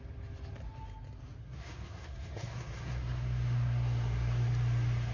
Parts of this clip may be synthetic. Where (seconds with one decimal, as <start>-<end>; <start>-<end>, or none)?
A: 1.4-4.5